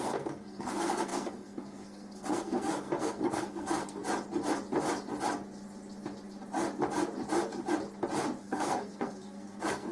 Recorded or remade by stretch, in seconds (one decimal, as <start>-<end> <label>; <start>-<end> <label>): 0.0-4.0 remade; 4.0-8.4 recorded; 8.4-9.9 remade

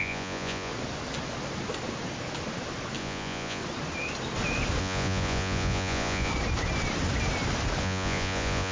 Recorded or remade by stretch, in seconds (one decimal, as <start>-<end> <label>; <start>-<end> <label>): 0.0-0.7 remade; 0.7-3.0 recorded; 3.0-3.6 remade; 3.6-4.8 recorded; 4.8-6.3 remade; 6.3-7.8 recorded; 7.8-8.7 remade